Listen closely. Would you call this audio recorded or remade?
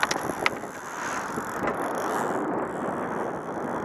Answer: recorded